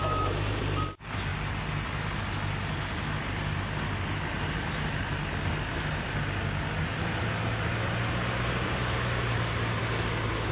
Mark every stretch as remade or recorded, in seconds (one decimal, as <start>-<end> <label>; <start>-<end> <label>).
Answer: 0.0-0.6 remade; 0.6-10.5 recorded